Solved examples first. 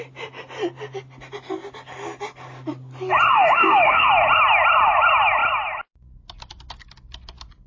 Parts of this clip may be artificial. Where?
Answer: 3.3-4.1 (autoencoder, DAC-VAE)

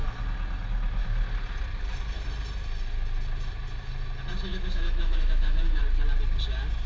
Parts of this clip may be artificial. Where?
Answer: 4.5-5.8 (autoencoder, DAC-VAE)

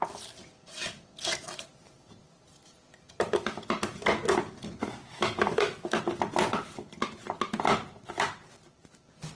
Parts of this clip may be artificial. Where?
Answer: 5.0-6.0 (autoencoder, DAC-VAE)